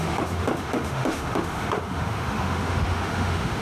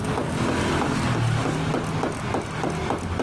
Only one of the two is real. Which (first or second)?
second